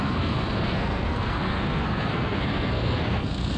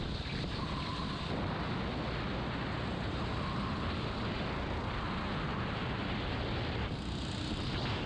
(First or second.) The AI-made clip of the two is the first